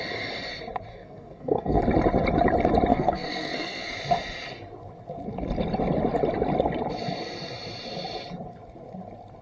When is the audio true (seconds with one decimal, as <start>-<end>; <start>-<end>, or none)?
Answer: 0.0-0.9; 1.8-2.9; 3.9-9.4